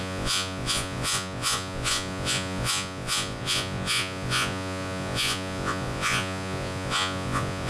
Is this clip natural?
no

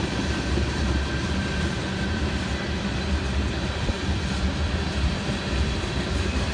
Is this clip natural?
no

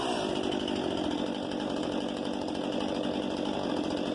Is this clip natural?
yes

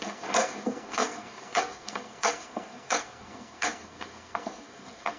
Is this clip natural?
no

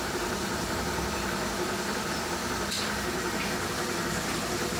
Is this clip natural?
no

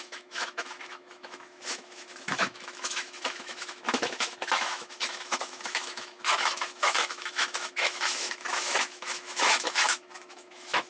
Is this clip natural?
no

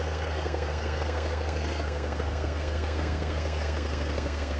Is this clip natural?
no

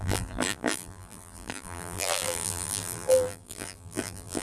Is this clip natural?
no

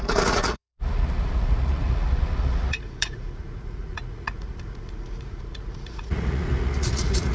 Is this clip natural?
no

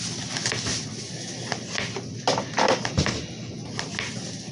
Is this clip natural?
yes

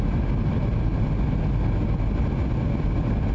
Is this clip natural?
yes